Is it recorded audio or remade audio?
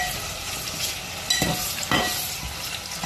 recorded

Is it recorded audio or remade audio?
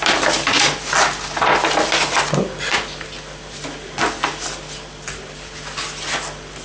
recorded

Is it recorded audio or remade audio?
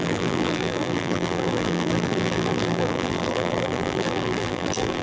remade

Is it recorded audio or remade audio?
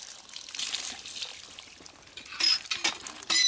remade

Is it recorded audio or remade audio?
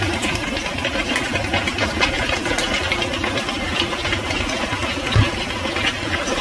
recorded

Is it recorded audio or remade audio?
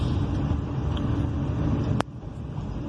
recorded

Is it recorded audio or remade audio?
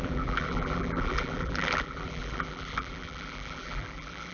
remade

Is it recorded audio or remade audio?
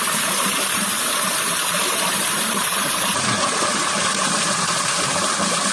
remade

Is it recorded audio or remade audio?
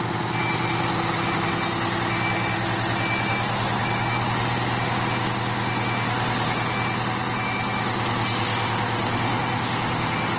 recorded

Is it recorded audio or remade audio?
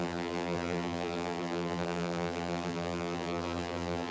remade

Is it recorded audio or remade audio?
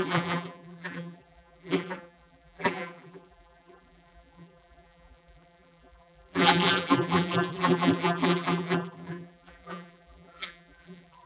remade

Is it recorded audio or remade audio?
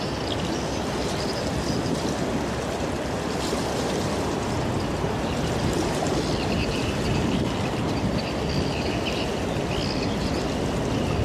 recorded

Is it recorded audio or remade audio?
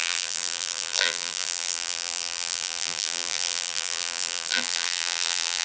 remade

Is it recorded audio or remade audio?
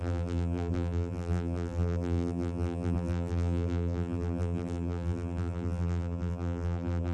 remade